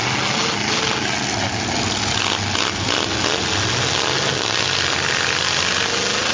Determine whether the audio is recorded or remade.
recorded